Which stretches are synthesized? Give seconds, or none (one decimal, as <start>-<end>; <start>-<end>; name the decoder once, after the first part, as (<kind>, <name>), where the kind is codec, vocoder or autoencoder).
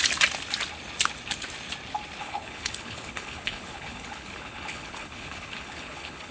2.2-6.3 (codec, HILCodec)